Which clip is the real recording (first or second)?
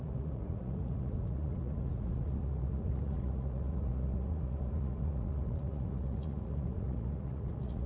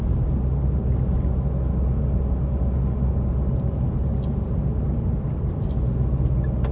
second